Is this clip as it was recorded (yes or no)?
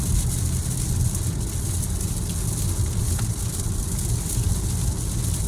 yes